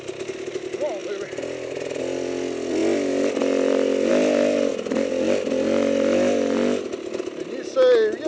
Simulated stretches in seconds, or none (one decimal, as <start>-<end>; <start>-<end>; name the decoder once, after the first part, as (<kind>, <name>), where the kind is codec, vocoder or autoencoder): none